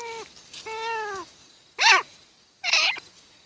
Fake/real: real